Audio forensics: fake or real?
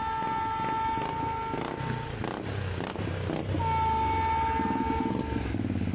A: real